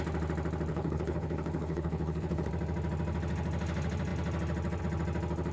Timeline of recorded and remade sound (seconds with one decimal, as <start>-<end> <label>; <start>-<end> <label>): 0.0-0.7 recorded; 0.7-2.5 remade; 2.5-5.5 recorded